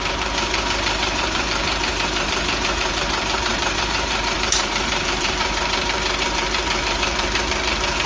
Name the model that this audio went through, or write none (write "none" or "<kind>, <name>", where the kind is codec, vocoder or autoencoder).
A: vocoder, BigVGAN v2